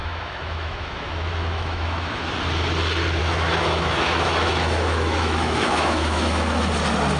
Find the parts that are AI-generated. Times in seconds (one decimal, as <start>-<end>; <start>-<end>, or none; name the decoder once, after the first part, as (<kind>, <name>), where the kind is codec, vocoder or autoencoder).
0.0-2.3 (autoencoder, DAC-VAE); 3.2-6.7